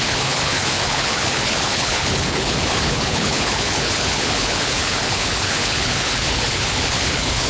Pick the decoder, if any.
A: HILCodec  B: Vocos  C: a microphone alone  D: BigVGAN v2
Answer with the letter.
A